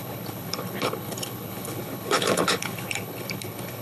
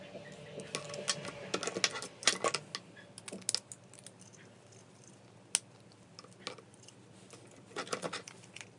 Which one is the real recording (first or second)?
second